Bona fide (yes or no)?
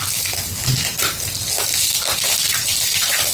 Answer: yes